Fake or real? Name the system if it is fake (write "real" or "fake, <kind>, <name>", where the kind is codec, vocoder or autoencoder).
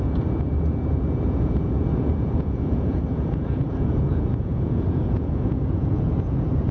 fake, vocoder, Vocos